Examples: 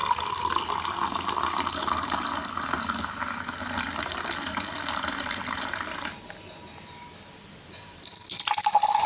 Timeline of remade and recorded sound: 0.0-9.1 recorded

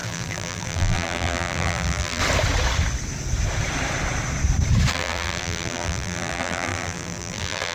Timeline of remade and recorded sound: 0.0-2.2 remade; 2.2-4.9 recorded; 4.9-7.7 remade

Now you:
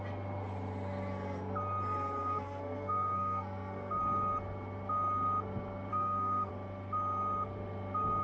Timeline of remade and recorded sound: 0.0-2.2 recorded; 2.2-4.0 remade; 4.0-5.9 recorded; 5.9-6.5 remade; 6.5-8.2 recorded

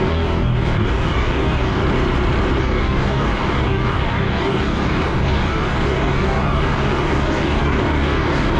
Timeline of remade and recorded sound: 0.0-1.8 remade; 1.8-2.6 recorded; 2.6-8.6 remade

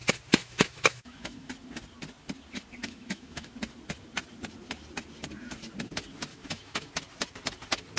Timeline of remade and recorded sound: 0.0-0.4 recorded; 0.4-1.5 remade; 1.5-2.8 recorded; 2.8-3.5 remade; 3.5-6.3 recorded; 6.3-6.9 remade; 6.9-8.0 recorded

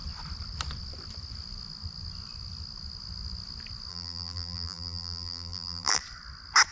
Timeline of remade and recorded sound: 0.0-3.9 recorded; 3.9-6.0 remade; 6.0-6.7 recorded

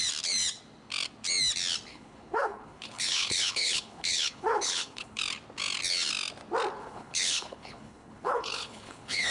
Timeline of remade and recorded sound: 0.0-1.9 recorded; 1.9-5.2 remade; 5.2-6.8 recorded; 6.8-9.3 remade